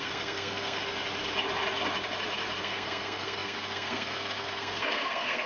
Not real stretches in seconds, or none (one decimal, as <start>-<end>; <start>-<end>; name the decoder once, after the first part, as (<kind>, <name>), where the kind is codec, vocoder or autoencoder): 0.0-0.8 (codec, SNAC); 2.6-5.5